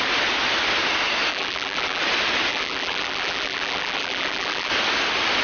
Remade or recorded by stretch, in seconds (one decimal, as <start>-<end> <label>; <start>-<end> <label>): 0.0-1.3 recorded; 1.3-2.0 remade; 2.0-2.5 recorded; 2.5-4.7 remade; 4.7-5.4 recorded